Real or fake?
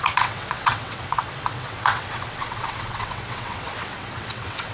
fake